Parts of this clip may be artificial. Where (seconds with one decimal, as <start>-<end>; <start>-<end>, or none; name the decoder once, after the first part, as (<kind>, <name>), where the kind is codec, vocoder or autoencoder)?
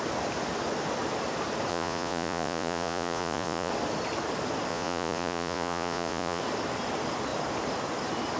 1.7-3.7 (vocoder, Vocos); 4.7-6.4